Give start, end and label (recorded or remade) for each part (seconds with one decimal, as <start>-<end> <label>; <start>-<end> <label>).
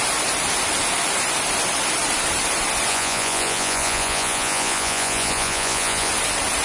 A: 0.0-2.9 recorded; 2.9-6.1 remade; 6.1-6.6 recorded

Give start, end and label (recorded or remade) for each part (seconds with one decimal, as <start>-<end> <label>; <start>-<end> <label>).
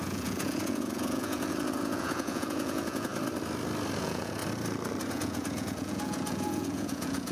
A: 0.0-3.1 remade; 3.1-4.0 recorded; 4.0-4.4 remade; 4.4-5.1 recorded; 5.1-7.3 remade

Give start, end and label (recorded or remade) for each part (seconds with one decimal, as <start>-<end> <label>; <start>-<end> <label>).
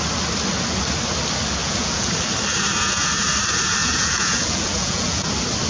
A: 0.0-1.6 recorded; 1.6-2.1 remade; 2.1-3.8 recorded; 3.8-5.3 remade; 5.3-5.7 recorded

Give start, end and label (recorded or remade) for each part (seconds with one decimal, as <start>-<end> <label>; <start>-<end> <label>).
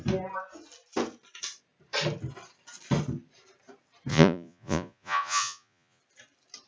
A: 0.0-4.1 recorded; 4.1-6.0 remade; 6.0-6.7 recorded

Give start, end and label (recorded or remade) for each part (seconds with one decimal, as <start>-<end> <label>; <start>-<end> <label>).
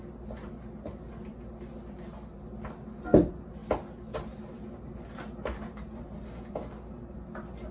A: 0.0-7.7 recorded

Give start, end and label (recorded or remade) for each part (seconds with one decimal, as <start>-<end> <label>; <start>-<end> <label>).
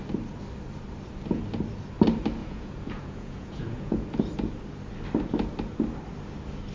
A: 0.0-2.4 recorded; 2.4-4.2 remade; 4.2-6.7 recorded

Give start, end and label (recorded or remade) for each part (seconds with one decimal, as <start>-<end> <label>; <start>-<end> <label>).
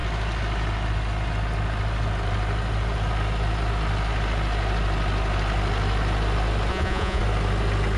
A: 0.0-6.7 recorded; 6.7-7.2 remade; 7.2-8.0 recorded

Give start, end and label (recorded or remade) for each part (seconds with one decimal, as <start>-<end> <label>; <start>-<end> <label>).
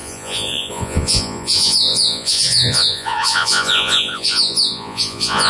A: 0.0-5.5 remade